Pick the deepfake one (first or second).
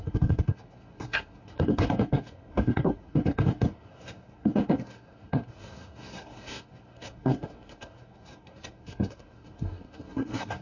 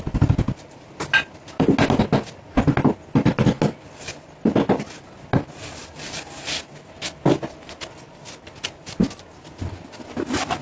first